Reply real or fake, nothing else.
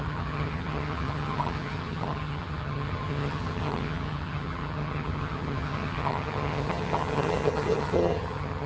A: fake